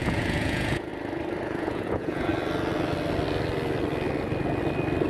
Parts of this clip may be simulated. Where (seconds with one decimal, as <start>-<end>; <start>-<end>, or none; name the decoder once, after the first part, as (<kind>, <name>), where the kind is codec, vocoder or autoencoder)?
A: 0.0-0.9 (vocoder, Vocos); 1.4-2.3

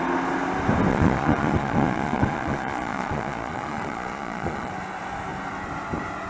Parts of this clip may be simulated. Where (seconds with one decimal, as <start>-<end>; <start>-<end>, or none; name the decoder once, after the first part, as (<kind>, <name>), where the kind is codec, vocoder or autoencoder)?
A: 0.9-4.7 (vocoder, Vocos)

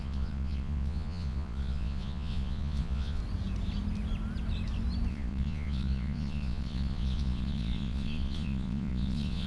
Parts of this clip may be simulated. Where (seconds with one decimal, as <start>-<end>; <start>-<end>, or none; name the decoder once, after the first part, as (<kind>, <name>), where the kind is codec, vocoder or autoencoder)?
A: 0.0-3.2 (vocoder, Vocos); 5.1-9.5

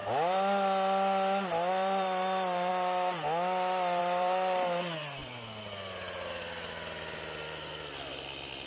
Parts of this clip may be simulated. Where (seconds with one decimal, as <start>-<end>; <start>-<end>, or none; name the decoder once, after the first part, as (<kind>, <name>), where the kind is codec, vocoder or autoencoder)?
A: 1.7-2.7 (vocoder, BigVGAN v2); 4.0-8.7

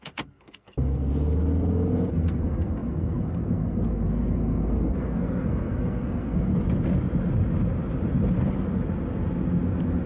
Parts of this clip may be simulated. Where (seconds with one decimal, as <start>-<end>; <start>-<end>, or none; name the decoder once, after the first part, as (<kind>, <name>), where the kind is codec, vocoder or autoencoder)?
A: 0.0-1.1 (codec, SNAC); 2.1-6.5

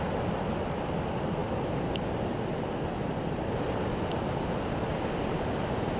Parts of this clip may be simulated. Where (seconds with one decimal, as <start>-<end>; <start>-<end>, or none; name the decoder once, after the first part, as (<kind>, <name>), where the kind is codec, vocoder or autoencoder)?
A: none